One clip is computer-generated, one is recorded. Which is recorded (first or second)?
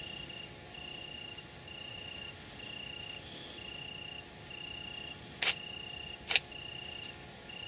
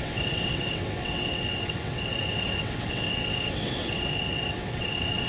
first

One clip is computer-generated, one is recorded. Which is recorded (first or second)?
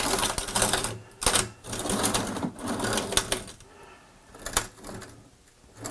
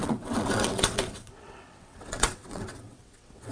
first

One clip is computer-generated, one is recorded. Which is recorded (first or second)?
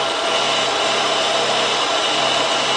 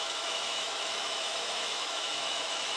first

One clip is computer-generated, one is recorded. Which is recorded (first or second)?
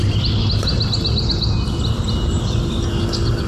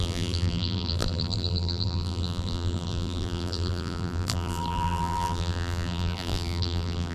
first